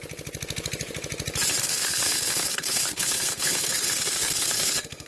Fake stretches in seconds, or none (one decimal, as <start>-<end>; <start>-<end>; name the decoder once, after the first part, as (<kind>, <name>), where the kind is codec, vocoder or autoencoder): 1.6-5.1 (codec, SNAC)